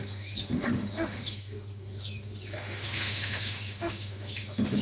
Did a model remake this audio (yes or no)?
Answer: yes